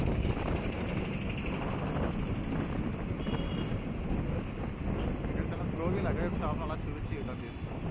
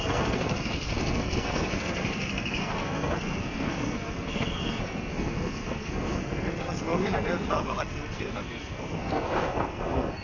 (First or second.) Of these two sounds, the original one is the first